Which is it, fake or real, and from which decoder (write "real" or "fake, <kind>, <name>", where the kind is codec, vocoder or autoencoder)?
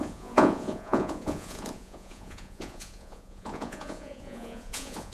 fake, vocoder, Vocos